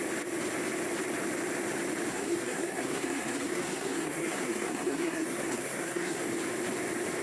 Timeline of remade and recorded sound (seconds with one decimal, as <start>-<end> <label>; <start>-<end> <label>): 0.0-2.1 recorded; 2.1-6.2 remade; 6.2-7.2 recorded